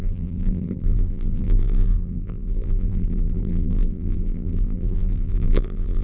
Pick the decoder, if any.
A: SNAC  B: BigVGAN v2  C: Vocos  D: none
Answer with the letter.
B